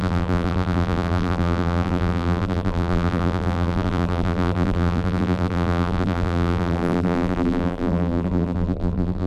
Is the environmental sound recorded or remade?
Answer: remade